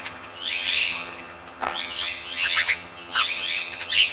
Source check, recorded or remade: remade